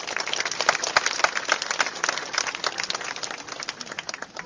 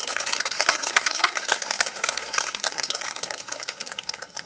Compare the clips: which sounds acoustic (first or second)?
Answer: first